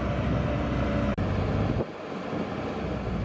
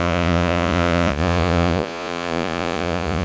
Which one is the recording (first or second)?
first